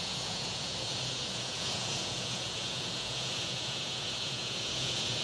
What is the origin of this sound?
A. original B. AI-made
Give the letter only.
B